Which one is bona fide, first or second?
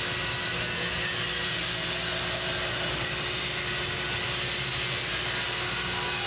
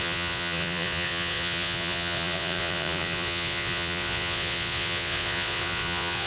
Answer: first